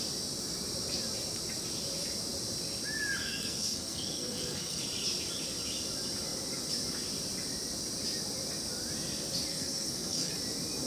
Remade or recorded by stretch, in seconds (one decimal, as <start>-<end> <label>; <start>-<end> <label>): 0.0-3.2 recorded; 3.2-4.8 remade; 4.8-9.5 recorded; 9.5-10.3 remade; 10.3-10.9 recorded